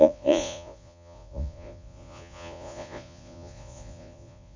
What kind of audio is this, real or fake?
fake